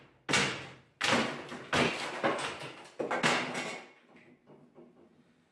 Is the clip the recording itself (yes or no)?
yes